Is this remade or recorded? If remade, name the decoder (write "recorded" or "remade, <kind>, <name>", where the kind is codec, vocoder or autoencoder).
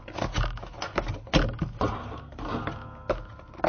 recorded